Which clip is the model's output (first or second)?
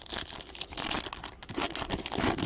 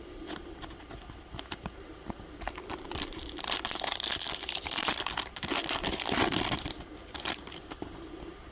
second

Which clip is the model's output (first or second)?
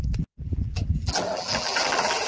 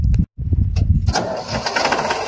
first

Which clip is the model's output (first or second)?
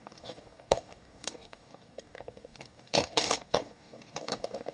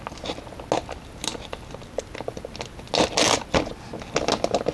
first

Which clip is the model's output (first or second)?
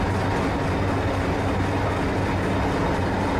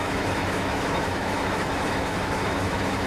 second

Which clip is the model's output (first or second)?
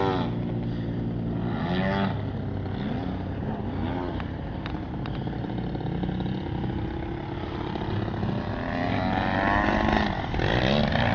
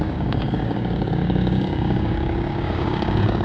second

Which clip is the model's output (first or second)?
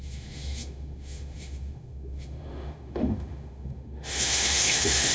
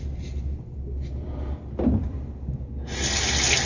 first